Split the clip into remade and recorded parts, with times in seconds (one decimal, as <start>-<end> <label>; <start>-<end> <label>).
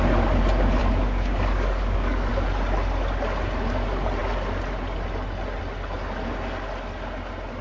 0.0-0.8 recorded; 0.8-2.3 remade; 2.3-7.6 recorded